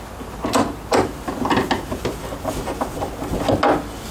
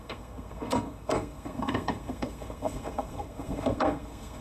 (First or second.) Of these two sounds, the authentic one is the first